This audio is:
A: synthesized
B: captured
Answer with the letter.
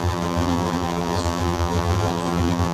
A